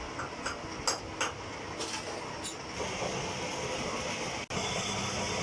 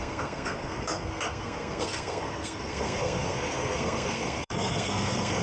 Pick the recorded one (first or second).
first